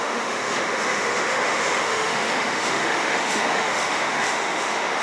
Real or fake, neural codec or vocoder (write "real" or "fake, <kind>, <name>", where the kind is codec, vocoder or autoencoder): fake, autoencoder, DAC-VAE